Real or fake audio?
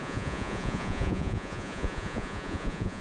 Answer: fake